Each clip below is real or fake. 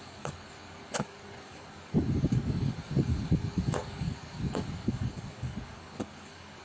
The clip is fake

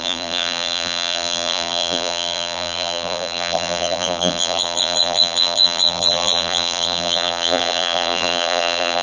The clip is fake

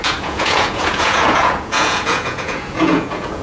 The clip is fake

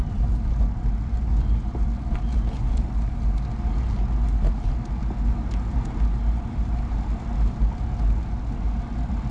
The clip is real